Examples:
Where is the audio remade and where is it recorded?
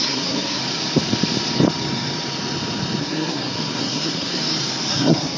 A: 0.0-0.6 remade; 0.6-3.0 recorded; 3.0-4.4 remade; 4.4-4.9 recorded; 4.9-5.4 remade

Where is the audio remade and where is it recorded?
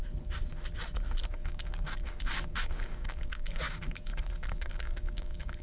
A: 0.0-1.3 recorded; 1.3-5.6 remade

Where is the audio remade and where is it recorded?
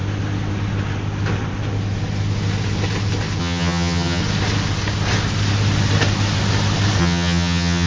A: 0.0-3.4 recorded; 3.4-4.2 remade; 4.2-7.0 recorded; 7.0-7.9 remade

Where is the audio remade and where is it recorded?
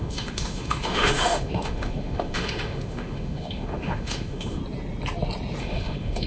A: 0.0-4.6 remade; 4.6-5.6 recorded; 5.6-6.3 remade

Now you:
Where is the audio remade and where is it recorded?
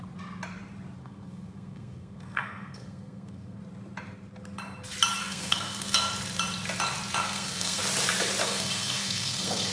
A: 0.0-1.0 recorded; 1.0-3.6 remade; 3.6-5.2 recorded; 5.2-6.1 remade; 6.1-7.2 recorded; 7.2-7.8 remade; 7.8-8.4 recorded; 8.4-9.7 remade